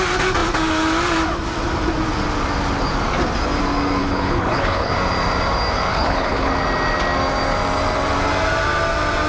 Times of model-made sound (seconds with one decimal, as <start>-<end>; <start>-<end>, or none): 4.0-4.9; 5.9-6.5